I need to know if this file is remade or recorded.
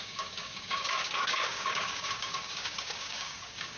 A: remade